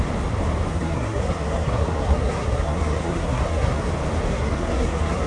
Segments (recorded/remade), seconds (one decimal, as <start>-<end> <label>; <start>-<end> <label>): 0.0-0.7 recorded; 0.7-3.9 remade; 3.9-4.3 recorded; 4.3-5.3 remade